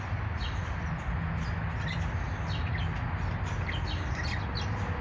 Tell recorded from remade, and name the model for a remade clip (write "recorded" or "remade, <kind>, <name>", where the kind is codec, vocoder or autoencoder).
recorded